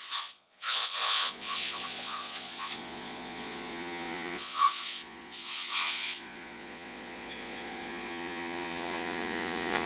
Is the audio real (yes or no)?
no